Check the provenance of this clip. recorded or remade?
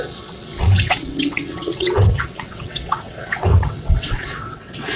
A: remade